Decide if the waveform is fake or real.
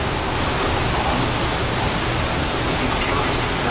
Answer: real